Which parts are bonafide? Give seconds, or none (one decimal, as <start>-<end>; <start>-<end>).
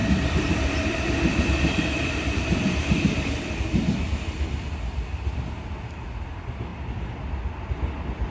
3.5-6.7; 7.3-8.3